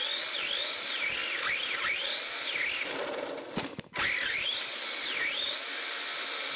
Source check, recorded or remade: recorded